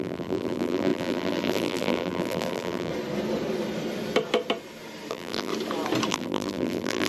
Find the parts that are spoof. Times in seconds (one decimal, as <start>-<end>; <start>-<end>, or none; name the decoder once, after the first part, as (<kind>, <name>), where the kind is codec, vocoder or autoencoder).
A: 0.0-2.9 (vocoder, BigVGAN v2); 5.1-5.5; 6.1-7.1